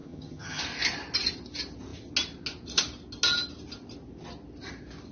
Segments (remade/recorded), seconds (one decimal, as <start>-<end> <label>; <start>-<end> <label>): 0.0-0.6 remade; 0.6-5.1 recorded